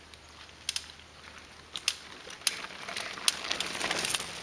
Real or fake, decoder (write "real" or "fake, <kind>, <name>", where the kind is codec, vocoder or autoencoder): real